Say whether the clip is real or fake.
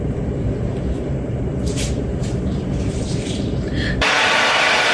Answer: fake